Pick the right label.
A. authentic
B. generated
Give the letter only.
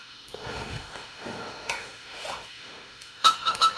B